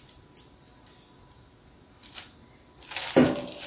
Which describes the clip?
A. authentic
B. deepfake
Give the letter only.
A